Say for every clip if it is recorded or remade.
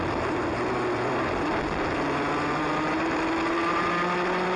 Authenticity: remade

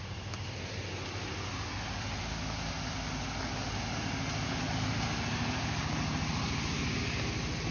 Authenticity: recorded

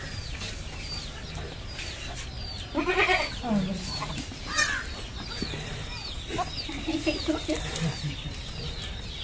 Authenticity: recorded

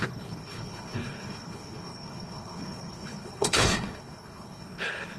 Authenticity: remade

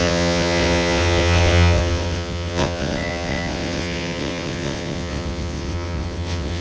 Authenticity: remade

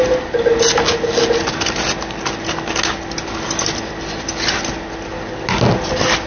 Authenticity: recorded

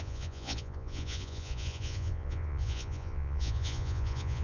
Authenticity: remade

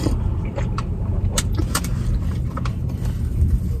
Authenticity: remade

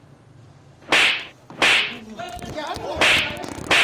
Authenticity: recorded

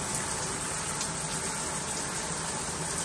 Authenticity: recorded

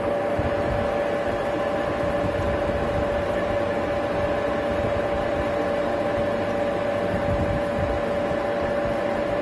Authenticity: recorded